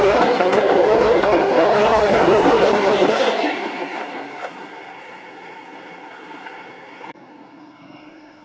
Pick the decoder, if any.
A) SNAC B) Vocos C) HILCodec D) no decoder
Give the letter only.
A